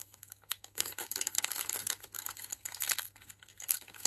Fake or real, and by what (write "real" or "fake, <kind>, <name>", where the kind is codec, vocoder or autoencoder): fake, codec, SNAC